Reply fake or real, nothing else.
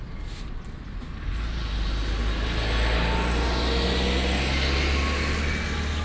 real